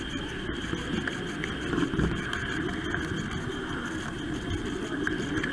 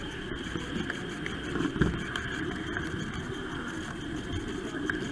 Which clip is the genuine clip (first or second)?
first